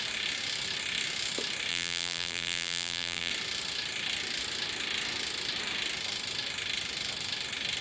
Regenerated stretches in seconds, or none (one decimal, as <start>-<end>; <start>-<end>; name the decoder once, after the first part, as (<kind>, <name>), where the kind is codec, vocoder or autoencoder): 1.7-3.3 (vocoder, BigVGAN v2)